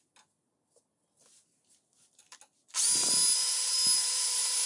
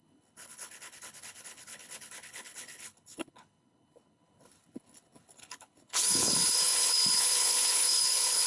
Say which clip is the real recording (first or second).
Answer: first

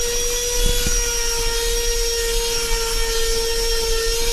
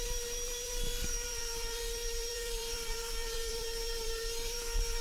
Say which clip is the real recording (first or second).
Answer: first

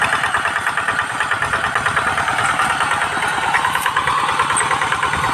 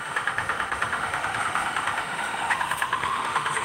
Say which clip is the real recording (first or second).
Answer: first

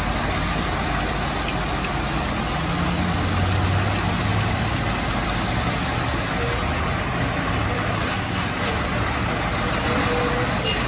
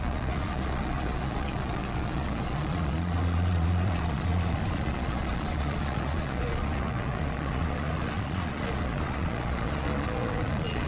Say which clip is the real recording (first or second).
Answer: first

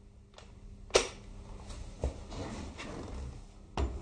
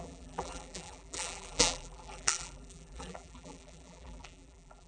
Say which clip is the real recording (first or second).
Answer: first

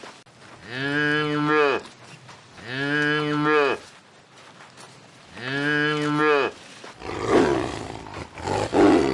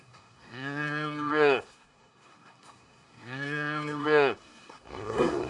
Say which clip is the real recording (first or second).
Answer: first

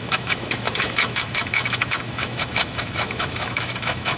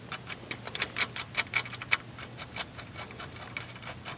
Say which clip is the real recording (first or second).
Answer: second